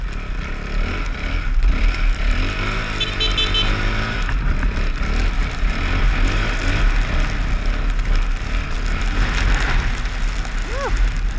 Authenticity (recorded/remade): recorded